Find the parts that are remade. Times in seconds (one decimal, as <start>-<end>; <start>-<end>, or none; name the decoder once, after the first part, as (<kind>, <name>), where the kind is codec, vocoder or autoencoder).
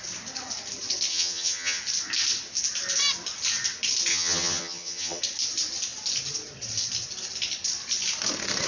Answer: 1.1-1.8 (vocoder, HiFi-GAN); 4.1-5.2